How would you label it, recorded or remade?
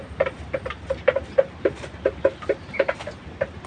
remade